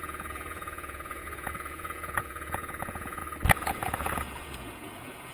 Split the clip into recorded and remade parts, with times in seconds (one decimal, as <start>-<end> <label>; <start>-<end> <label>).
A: 0.0-3.2 remade; 3.2-3.7 recorded; 3.7-5.3 remade